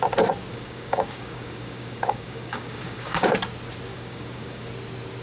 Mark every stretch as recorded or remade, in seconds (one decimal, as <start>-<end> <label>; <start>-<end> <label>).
0.0-0.5 recorded; 0.5-3.3 remade; 3.3-3.9 recorded; 3.9-4.7 remade; 4.7-5.2 recorded